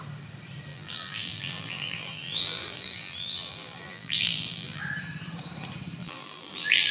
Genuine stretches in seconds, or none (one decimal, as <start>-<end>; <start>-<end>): 0.0-0.7; 4.8-6.0